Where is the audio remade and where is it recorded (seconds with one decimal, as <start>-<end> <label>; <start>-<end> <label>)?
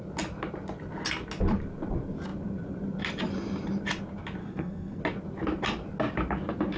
0.0-4.4 recorded; 4.4-5.0 remade; 5.0-6.8 recorded